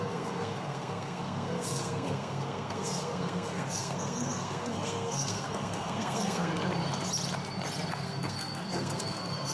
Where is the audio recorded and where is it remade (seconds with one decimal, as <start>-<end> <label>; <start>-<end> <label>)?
0.0-6.5 remade; 6.5-7.9 recorded; 7.9-9.5 remade

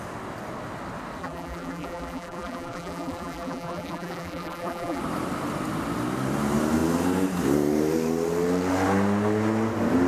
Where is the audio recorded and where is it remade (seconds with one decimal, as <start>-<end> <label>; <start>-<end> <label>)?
0.0-1.2 recorded; 1.2-5.0 remade; 5.0-10.1 recorded

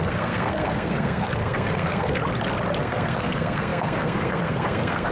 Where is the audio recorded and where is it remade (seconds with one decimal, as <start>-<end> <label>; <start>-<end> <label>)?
0.0-2.2 remade; 2.2-2.8 recorded; 2.8-5.1 remade

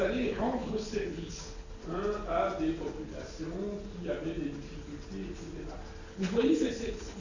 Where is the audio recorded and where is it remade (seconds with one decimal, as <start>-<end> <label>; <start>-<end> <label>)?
0.0-1.8 remade; 1.8-6.1 recorded; 6.1-7.2 remade

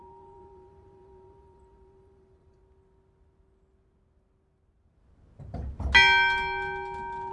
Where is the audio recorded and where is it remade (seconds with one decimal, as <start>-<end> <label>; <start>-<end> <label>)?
0.0-2.6 remade; 2.6-7.3 recorded

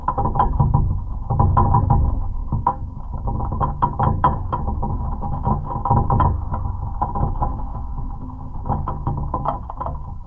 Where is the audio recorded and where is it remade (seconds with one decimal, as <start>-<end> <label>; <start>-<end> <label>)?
0.0-1.8 recorded; 1.8-6.5 remade; 6.5-7.3 recorded; 7.3-10.3 remade

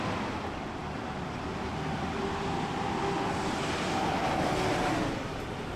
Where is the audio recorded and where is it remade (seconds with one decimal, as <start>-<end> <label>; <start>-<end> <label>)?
0.0-5.8 recorded